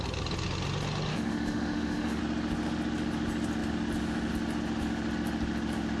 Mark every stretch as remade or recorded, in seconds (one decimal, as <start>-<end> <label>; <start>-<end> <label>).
0.0-1.1 recorded; 1.1-2.2 remade; 2.2-6.0 recorded